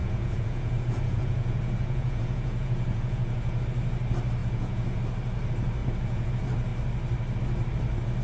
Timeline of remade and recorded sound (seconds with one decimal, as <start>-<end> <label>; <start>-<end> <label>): 0.0-3.6 remade; 3.6-4.4 recorded; 4.4-5.0 remade; 5.0-5.8 recorded; 5.8-6.3 remade; 6.3-8.2 recorded